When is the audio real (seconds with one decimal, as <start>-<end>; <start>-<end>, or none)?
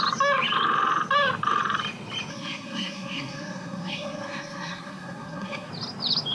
0.0-2.3; 5.7-6.3